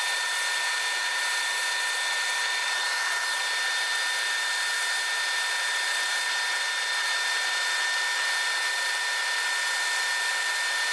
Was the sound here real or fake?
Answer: real